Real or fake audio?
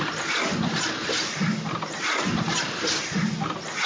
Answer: real